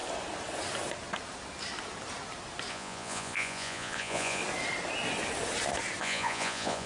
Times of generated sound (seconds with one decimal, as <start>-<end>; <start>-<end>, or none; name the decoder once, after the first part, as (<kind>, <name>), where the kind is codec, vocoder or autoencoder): 2.7-4.4 (vocoder, Vocos); 6.0-6.9